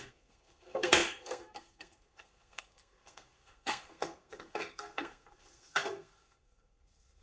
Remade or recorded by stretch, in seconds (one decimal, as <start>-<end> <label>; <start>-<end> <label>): 0.0-7.2 remade